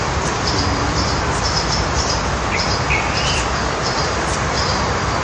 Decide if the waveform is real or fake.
fake